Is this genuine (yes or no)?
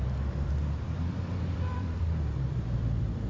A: no